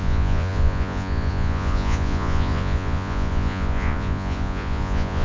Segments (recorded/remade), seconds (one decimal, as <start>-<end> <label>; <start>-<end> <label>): 0.0-5.2 remade